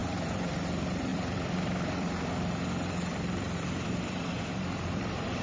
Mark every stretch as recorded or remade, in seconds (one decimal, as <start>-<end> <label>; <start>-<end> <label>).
0.0-5.4 remade